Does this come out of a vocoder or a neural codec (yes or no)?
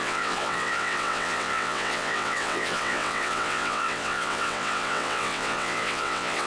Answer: yes